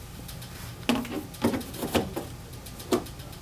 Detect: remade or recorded recorded